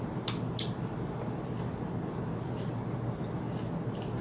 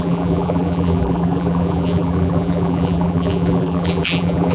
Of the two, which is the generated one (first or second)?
second